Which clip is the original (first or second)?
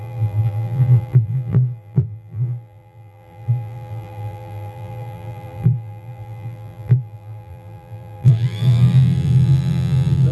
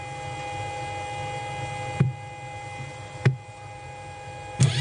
second